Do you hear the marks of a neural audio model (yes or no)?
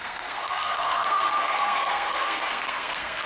yes